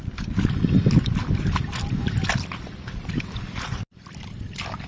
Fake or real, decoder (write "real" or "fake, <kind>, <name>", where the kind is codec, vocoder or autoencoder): real